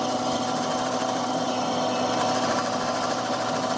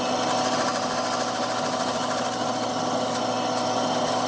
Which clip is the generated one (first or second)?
first